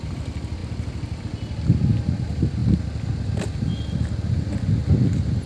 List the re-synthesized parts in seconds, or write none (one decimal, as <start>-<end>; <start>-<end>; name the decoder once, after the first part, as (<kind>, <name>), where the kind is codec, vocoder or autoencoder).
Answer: none